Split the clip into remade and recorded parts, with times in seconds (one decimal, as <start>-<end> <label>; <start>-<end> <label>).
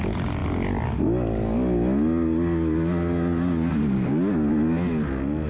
0.0-5.5 recorded